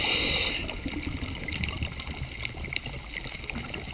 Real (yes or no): yes